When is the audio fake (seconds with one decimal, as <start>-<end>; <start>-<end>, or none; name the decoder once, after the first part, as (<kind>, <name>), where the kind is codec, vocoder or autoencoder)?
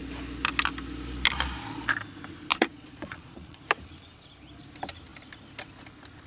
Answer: 2.5-3.6 (vocoder, Vocos)